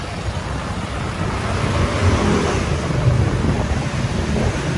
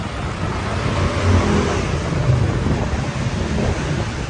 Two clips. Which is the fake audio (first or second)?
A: first